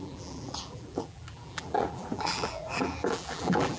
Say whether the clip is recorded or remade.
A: remade